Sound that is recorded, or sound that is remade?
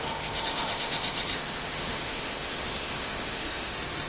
remade